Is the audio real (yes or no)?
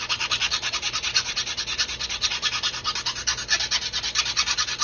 yes